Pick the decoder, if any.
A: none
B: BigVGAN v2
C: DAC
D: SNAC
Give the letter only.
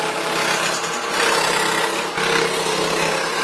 A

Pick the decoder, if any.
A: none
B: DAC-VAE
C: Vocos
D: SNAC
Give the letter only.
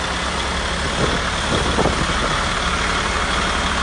A